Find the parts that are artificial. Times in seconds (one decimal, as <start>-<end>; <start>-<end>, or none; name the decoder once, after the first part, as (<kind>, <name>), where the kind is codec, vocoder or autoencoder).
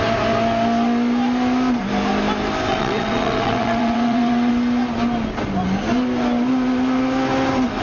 2.7-4.5 (vocoder, WaveNeXt)